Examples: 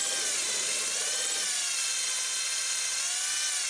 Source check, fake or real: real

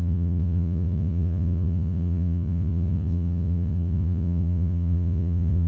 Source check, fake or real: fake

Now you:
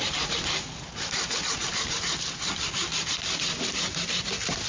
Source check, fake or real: real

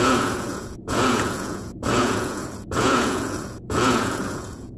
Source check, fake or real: fake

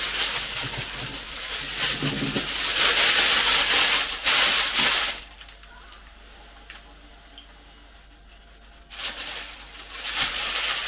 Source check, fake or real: real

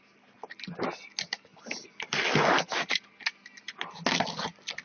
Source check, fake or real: real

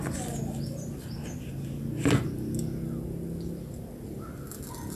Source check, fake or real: real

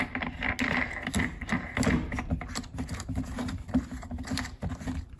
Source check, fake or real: real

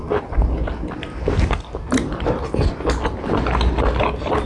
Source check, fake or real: real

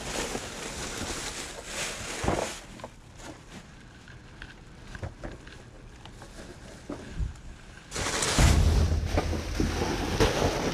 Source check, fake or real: real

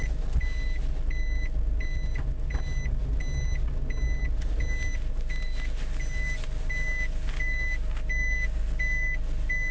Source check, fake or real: real